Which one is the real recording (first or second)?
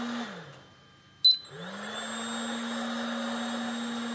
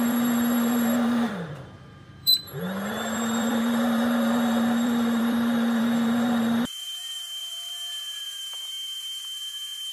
first